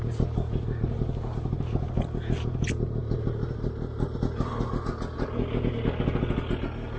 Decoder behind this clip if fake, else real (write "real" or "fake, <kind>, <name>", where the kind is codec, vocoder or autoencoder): real